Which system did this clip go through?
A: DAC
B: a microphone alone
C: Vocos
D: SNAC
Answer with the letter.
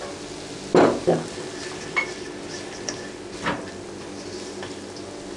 B